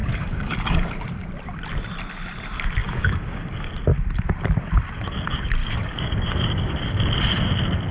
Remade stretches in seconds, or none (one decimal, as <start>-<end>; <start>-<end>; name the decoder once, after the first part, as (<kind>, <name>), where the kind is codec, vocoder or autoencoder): 0.0-0.9 (codec, DAC); 2.8-3.7; 5.6-7.1